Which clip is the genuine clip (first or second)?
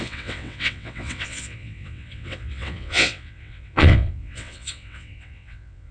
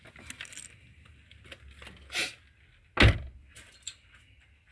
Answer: second